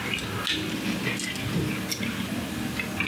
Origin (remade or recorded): recorded